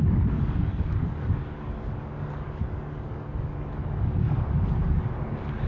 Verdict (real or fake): fake